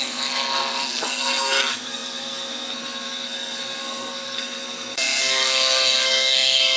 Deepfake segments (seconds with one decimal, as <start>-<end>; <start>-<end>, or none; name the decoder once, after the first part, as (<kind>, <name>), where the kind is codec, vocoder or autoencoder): 0.0-6.8 (codec, SNAC)